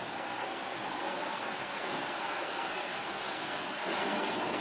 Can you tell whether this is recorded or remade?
remade